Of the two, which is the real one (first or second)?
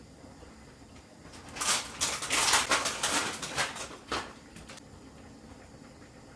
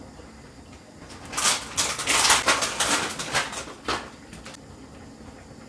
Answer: second